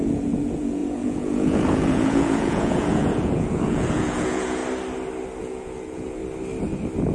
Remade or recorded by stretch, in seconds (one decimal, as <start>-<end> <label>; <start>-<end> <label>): 0.0-4.6 remade; 4.6-5.4 recorded; 5.4-6.2 remade; 6.2-7.1 recorded